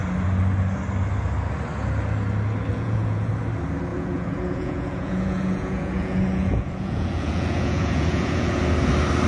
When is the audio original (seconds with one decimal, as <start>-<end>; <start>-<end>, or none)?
0.0-2.7; 3.3-3.9; 8.6-9.3